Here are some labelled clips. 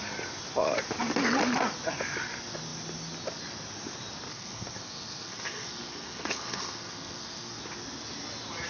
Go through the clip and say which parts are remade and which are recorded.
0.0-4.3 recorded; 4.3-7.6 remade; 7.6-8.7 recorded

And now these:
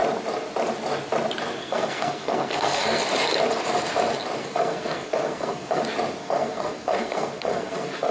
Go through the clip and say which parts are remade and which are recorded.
0.0-1.6 recorded; 1.6-3.0 remade; 3.0-4.4 recorded; 4.4-5.8 remade; 5.8-6.2 recorded; 6.2-8.1 remade

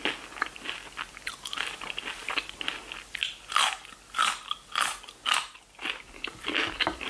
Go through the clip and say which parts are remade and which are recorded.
0.0-7.1 recorded

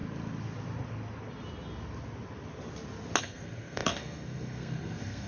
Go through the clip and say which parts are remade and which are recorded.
0.0-3.2 recorded; 3.2-5.3 remade